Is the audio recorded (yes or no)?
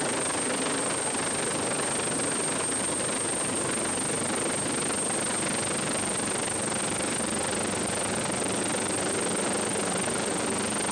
yes